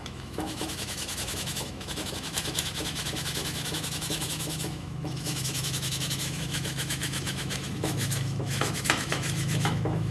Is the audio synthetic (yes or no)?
yes